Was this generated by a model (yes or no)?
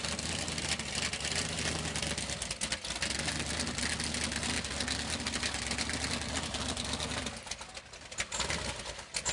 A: no